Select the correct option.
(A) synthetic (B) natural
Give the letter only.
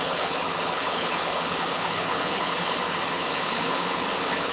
A